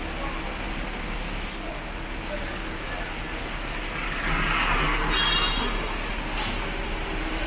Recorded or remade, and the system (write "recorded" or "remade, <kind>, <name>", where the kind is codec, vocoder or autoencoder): recorded